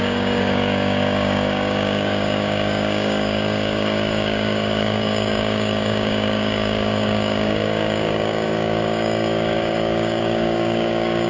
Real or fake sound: fake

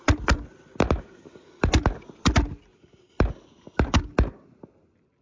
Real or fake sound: real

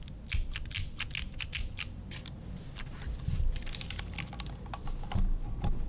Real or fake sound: real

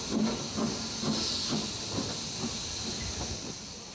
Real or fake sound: real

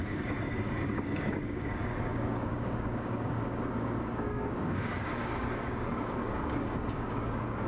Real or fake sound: fake